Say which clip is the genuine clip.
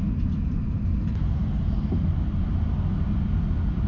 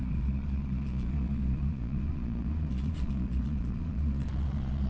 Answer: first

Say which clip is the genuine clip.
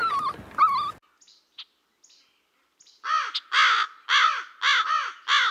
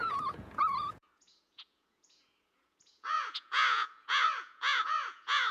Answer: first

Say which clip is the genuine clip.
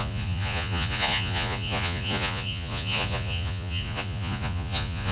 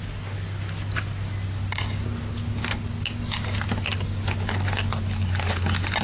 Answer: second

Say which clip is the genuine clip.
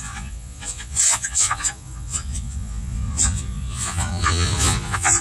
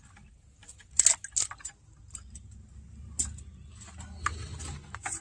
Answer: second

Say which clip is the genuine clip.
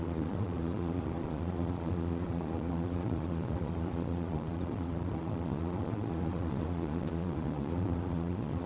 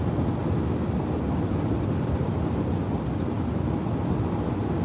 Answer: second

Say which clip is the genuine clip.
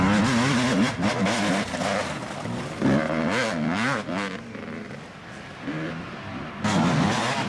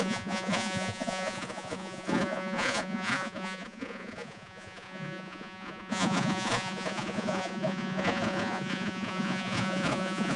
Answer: first